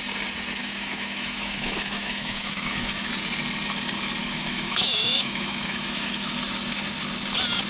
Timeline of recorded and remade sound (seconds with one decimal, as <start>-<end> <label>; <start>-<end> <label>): 0.0-0.6 recorded; 0.6-3.1 remade; 3.1-4.2 recorded; 4.2-6.4 remade; 6.4-7.7 recorded